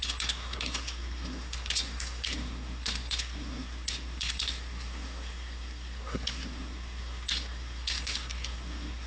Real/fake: fake